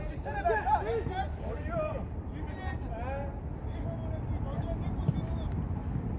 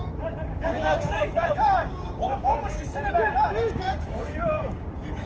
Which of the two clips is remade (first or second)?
second